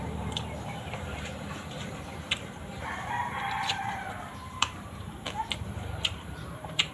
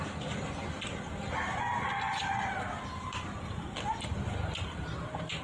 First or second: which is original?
second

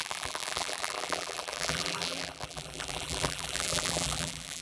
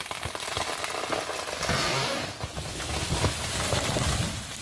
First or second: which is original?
second